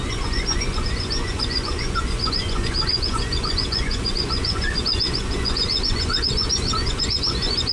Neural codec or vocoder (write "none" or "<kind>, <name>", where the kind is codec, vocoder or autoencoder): vocoder, Vocos